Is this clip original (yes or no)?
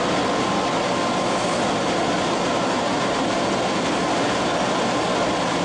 yes